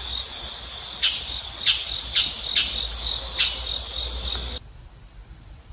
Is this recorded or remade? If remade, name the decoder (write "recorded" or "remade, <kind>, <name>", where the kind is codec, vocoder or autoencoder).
recorded